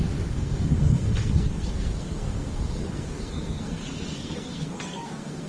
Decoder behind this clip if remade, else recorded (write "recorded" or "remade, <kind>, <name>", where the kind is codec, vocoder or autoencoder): remade, codec, SNAC